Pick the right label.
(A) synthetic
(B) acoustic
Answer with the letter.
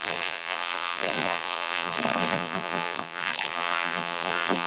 A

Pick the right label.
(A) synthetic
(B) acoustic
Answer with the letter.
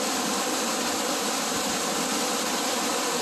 B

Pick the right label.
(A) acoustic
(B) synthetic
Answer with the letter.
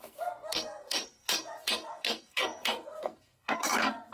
B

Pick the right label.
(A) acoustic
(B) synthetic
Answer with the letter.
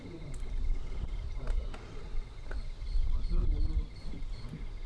A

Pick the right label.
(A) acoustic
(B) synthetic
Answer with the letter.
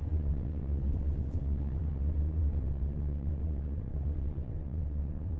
B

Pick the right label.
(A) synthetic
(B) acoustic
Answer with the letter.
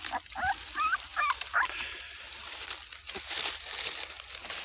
B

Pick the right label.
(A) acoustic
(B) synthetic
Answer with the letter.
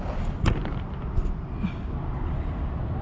A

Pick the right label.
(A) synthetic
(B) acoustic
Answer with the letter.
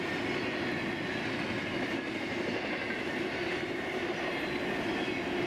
B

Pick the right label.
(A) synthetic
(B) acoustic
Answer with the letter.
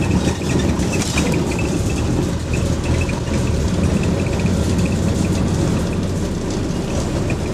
B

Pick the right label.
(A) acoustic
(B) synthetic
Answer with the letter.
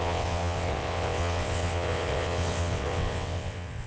B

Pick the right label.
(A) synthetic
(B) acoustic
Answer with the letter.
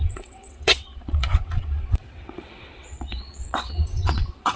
A